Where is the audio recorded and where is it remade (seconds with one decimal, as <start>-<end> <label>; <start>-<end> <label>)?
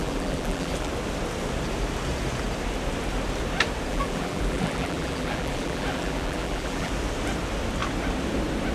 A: 0.0-0.9 remade; 0.9-3.9 recorded; 3.9-6.9 remade; 6.9-8.7 recorded